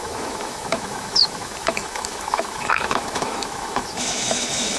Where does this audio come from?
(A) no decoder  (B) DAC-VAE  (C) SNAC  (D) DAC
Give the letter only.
B